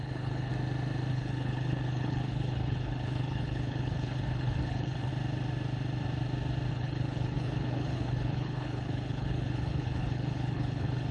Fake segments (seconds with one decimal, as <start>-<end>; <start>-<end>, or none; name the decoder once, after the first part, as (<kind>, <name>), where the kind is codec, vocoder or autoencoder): 0.0-0.5 (codec, HILCodec); 1.1-5.1; 6.7-11.1